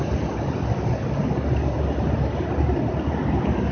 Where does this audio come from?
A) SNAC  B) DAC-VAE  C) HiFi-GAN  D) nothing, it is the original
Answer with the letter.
D